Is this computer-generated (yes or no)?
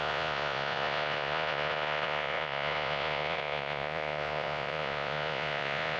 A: yes